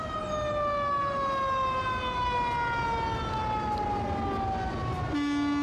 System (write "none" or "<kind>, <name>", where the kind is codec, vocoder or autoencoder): none